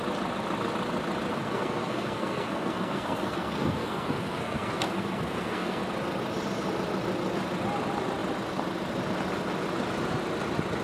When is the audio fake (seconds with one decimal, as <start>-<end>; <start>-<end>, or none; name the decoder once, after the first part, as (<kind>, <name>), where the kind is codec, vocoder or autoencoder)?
1.3-5.8 (codec, SNAC)